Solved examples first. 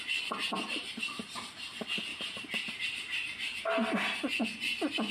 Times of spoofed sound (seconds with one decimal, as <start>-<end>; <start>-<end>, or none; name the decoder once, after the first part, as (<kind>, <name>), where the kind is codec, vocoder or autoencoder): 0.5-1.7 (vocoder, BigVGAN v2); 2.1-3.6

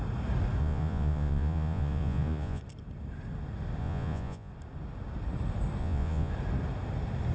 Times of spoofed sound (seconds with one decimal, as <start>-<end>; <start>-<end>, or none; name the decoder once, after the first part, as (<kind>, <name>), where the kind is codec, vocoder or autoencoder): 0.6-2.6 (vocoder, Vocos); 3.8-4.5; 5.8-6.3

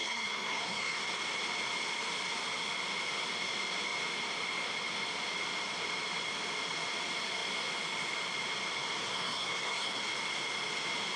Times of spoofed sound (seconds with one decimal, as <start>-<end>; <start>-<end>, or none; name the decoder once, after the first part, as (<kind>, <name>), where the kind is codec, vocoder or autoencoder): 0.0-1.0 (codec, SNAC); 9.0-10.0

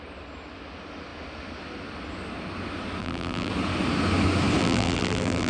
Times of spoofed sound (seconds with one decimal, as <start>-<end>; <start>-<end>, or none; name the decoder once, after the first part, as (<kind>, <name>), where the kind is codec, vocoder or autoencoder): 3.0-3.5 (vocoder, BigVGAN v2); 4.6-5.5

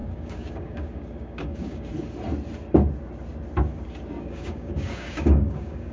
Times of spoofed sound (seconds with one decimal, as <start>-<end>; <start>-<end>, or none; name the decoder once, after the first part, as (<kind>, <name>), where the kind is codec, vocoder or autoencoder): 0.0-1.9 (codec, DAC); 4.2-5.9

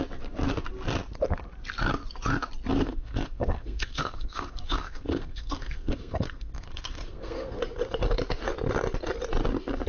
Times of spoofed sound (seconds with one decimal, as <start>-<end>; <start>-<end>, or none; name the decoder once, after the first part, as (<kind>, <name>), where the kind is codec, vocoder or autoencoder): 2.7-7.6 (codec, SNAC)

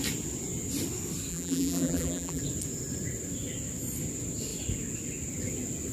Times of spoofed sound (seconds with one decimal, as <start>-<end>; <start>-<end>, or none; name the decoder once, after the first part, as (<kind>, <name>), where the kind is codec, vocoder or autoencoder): 1.3-2.4 (vocoder, BigVGAN v2)